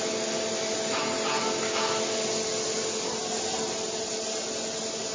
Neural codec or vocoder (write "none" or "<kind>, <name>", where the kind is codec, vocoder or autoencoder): none